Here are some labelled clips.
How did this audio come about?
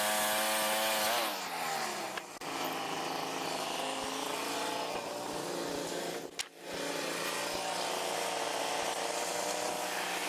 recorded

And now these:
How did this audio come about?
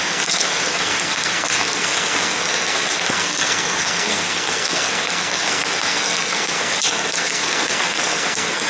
remade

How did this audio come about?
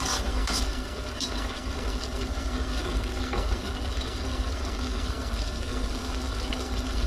remade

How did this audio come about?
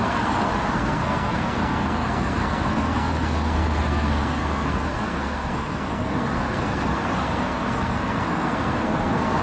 remade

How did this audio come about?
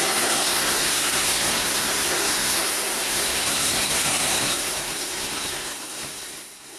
remade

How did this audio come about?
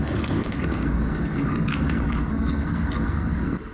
remade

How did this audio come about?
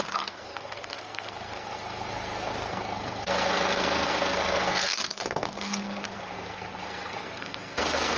remade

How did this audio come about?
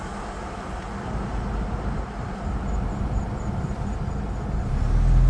recorded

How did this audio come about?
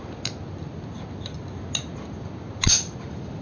recorded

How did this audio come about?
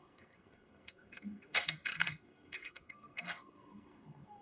remade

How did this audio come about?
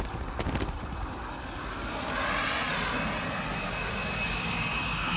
recorded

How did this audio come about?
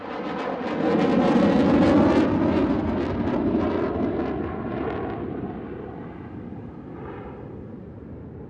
recorded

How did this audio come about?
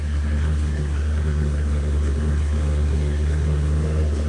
remade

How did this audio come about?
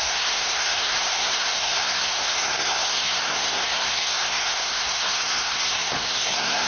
remade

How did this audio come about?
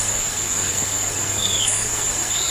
remade